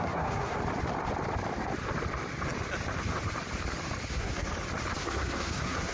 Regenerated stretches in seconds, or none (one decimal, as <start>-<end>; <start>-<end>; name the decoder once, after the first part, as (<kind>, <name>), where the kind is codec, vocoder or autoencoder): 0.0-0.6 (codec, SNAC); 4.1-4.5; 5.0-5.9